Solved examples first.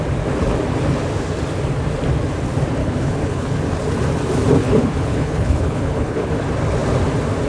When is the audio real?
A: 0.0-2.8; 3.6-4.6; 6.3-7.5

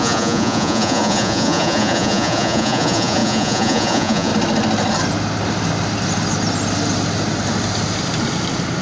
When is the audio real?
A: 4.3-8.8

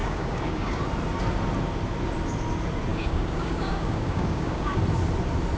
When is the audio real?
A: 0.8-2.9; 4.8-5.6